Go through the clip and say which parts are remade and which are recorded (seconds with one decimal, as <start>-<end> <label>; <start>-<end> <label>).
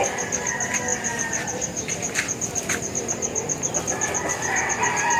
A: 0.0-5.2 recorded